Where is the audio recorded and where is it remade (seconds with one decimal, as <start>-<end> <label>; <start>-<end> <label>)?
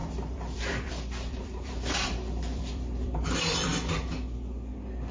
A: 0.0-3.7 remade; 3.7-5.1 recorded